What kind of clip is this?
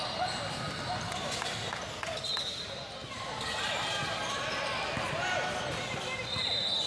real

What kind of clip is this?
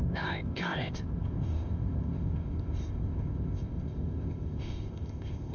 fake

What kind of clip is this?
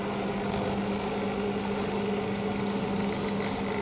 real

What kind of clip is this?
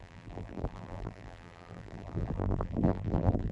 fake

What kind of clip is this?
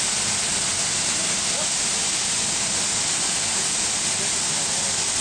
real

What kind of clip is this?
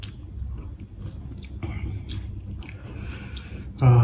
real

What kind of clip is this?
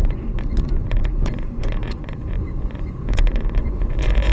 fake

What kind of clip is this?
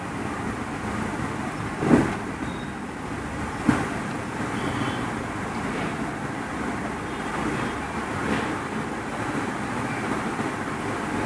real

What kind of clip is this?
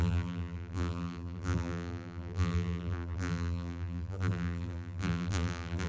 fake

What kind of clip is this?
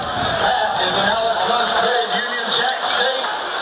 real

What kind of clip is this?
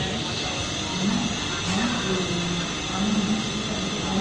real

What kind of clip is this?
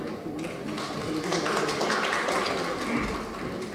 real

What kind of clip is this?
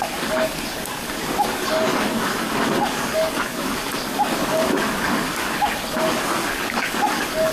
fake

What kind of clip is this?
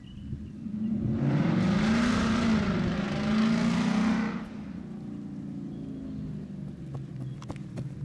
real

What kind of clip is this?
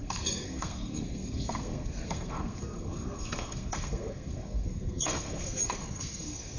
fake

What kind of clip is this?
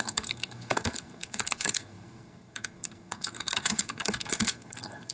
fake